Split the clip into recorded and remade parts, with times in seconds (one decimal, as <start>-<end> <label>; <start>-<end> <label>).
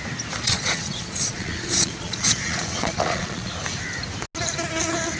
0.0-0.4 recorded; 0.4-3.5 remade; 3.5-5.2 recorded